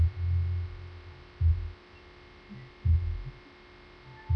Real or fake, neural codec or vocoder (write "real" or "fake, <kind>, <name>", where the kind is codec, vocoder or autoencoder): real